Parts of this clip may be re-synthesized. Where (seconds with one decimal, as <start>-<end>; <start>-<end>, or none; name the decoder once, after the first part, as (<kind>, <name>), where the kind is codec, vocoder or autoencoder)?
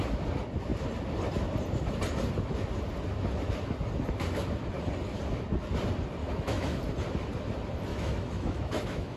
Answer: 6.2-6.8 (autoencoder, DAC-VAE); 7.9-9.2